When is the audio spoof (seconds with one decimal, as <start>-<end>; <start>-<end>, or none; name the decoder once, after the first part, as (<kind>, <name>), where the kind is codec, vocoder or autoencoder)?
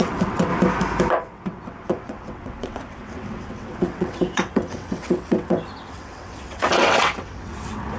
0.0-0.5 (vocoder, WaveNeXt); 1.1-8.0